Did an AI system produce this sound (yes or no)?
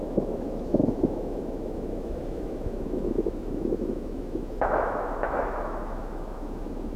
yes